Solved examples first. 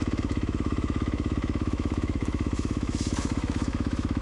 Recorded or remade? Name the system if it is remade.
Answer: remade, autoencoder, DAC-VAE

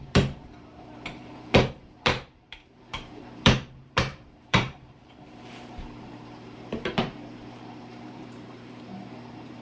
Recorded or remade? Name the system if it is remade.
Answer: remade, vocoder, BigVGAN v2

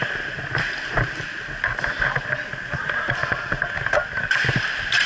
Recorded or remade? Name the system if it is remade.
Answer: recorded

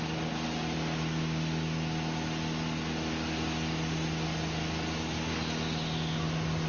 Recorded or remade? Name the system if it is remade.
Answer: recorded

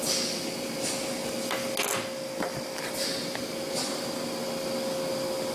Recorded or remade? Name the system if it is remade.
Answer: recorded